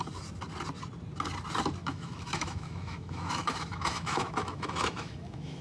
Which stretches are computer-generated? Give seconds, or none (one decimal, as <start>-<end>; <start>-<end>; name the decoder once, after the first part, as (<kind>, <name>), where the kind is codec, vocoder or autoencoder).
1.8-5.6 (autoencoder, DAC-VAE)